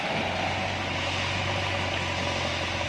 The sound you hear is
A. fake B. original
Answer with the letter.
B